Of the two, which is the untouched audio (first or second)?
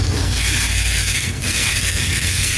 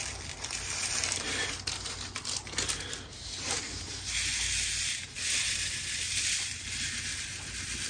second